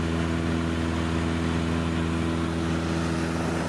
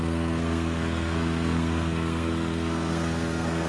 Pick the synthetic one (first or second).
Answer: second